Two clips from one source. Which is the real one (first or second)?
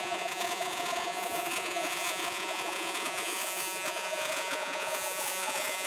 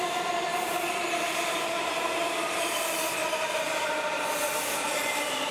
second